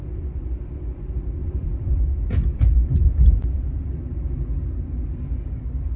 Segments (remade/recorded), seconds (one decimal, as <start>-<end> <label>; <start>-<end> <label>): 0.0-1.4 recorded; 1.4-2.0 remade; 2.0-2.5 recorded; 2.5-5.2 remade; 5.2-6.0 recorded